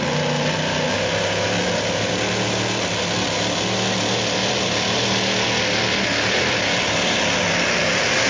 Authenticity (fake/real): real